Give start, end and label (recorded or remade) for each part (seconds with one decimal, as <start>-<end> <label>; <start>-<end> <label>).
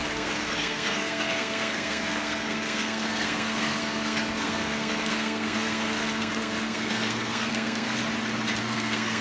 0.0-8.0 remade; 8.0-8.6 recorded; 8.6-9.2 remade